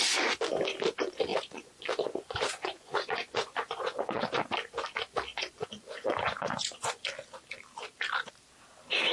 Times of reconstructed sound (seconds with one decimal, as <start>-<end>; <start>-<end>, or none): 1.3-4.2; 5.3-7.0